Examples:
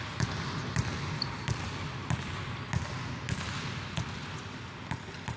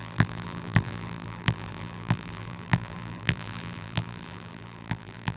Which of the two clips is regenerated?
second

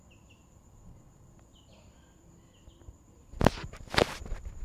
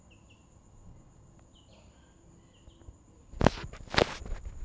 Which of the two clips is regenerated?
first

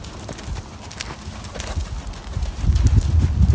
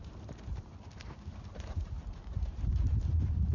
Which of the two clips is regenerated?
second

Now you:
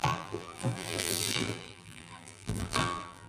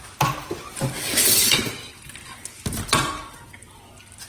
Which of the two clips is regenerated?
first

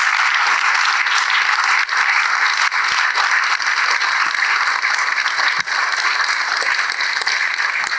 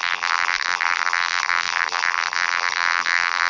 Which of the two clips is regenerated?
second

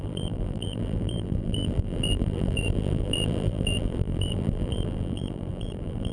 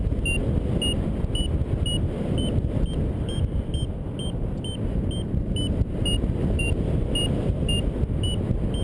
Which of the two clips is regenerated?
first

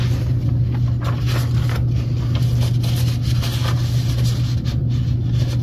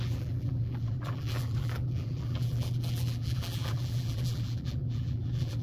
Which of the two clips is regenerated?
second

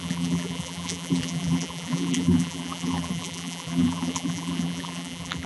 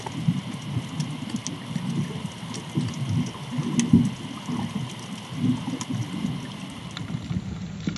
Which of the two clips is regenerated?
first